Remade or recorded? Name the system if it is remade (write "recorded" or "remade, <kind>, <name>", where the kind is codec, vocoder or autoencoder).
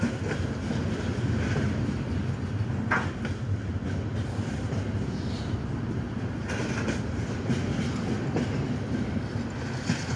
recorded